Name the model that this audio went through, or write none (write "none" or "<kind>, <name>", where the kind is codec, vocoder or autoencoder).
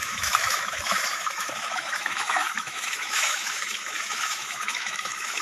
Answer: autoencoder, DAC-VAE